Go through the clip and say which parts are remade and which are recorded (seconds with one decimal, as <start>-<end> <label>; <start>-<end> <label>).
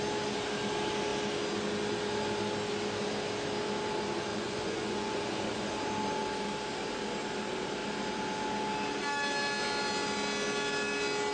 0.0-4.3 recorded; 4.3-5.8 remade; 5.8-11.3 recorded